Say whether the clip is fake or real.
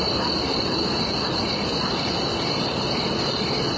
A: real